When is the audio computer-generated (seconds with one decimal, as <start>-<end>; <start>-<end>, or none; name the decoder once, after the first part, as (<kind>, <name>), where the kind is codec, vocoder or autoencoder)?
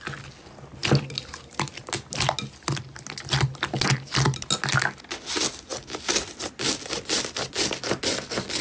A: none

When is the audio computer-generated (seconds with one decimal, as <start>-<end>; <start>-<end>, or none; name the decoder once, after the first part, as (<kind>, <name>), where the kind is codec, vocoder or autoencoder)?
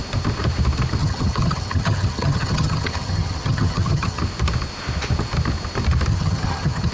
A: 1.0-4.2 (vocoder, HiFi-GAN); 6.1-6.9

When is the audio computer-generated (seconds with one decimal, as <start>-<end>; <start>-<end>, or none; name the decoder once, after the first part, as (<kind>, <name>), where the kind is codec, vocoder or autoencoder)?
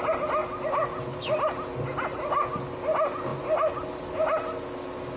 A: none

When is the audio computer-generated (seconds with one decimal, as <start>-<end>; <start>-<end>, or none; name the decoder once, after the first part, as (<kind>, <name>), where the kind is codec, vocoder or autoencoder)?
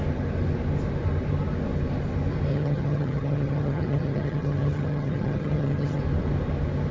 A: 2.5-6.0 (vocoder, HiFi-GAN)